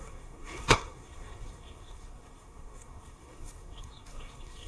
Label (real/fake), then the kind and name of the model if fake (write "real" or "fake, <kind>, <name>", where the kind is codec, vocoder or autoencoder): fake, codec, SNAC